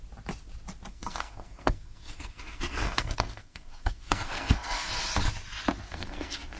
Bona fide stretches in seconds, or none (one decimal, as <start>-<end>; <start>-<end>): 0.0-0.9; 4.9-5.9